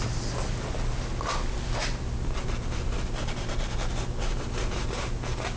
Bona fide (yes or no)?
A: yes